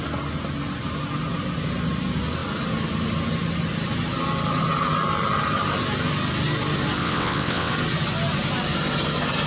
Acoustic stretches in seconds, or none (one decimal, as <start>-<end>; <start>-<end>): 0.0-7.0; 7.7-9.5

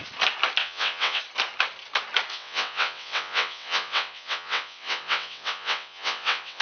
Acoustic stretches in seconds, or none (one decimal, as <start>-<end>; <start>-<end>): 0.0-0.6; 1.2-2.3

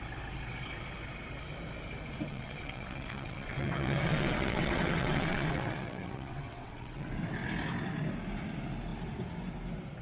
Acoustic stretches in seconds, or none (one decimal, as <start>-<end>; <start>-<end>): 0.0-2.3; 7.1-10.0

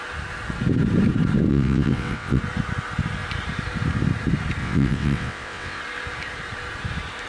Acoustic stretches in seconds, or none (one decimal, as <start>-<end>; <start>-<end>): 0.0-1.5; 2.4-4.6; 5.8-7.3

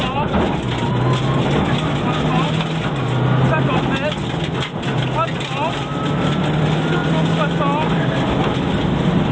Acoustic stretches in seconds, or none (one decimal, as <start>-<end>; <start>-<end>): 0.0-9.3

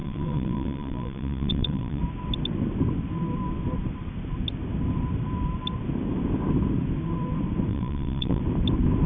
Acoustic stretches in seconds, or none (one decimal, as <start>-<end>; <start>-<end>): 2.0-7.7; 8.4-9.1

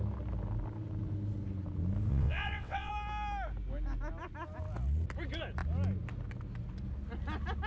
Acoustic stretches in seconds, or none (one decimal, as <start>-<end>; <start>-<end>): 0.0-2.1; 2.9-7.7

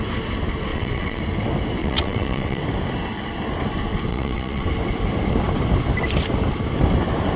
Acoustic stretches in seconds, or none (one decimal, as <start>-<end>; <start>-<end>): 0.0-0.7; 1.2-1.8; 2.6-4.1; 4.7-7.4